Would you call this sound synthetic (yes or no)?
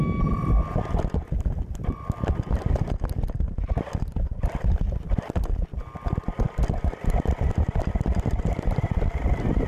no